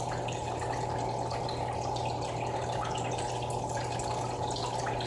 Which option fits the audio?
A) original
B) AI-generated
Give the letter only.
A